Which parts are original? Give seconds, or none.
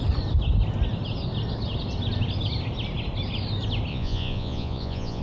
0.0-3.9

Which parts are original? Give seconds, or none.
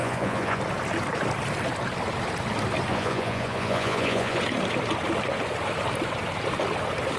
0.6-2.9; 4.4-7.2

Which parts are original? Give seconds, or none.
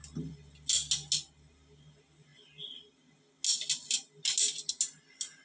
0.0-5.4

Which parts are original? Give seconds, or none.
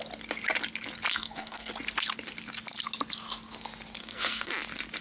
0.0-1.1; 1.7-4.0; 4.5-5.0